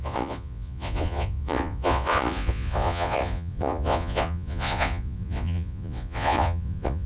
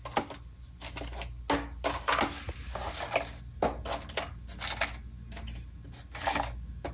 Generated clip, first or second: first